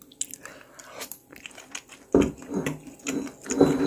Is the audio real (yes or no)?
yes